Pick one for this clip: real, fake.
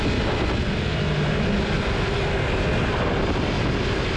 real